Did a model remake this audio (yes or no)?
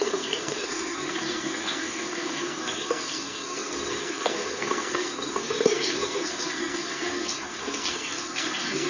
yes